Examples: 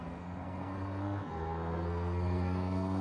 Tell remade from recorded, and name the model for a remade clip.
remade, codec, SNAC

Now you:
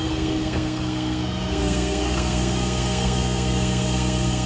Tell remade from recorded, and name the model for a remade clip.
remade, codec, SNAC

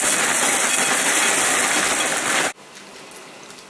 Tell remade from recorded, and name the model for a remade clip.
recorded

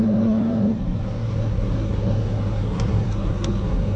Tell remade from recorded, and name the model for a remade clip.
remade, codec, SNAC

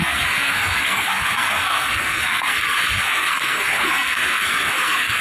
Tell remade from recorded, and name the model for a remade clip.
remade, codec, SNAC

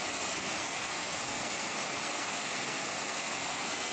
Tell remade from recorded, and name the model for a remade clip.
remade, codec, SNAC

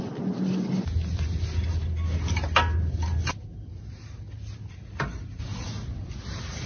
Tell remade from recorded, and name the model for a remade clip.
recorded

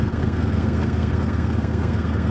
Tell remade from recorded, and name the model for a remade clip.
remade, codec, SNAC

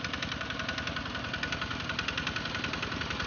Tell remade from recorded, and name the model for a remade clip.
recorded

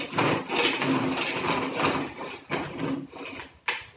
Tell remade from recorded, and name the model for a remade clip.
recorded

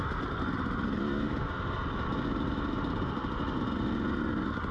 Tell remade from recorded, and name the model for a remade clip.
recorded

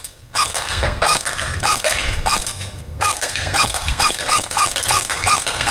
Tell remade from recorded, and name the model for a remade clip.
remade, codec, SNAC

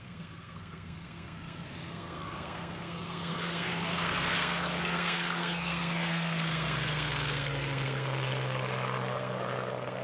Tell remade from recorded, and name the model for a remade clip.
remade, codec, SNAC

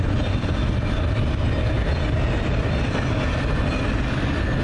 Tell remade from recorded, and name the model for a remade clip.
recorded